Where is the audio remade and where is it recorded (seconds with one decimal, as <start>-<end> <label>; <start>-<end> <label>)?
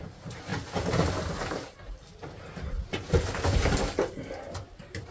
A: 0.0-5.1 recorded